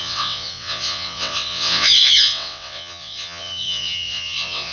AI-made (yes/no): yes